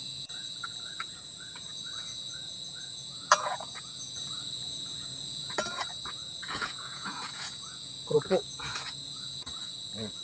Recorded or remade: remade